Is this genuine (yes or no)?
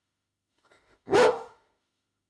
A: no